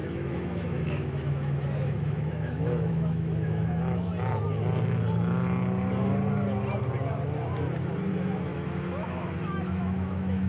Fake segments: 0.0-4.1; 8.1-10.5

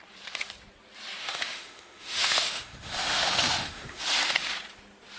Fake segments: 1.2-4.0

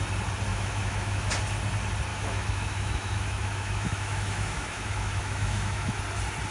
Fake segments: 0.5-1.3; 2.1-6.0

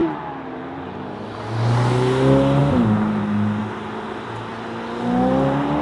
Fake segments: none

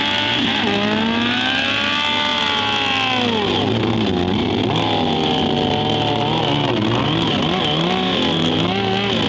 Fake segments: none

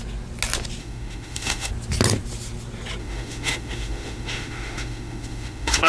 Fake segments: 0.8-1.7; 3.0-5.9

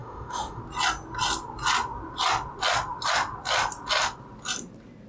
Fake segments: 0.0-0.6

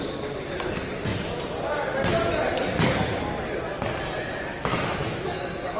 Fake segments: 4.7-5.8